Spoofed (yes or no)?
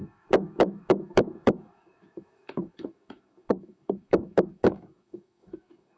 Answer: yes